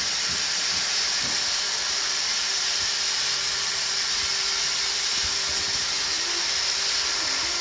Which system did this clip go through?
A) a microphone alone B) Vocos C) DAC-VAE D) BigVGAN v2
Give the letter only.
D